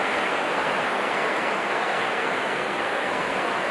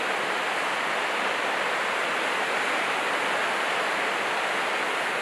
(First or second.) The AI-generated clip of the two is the first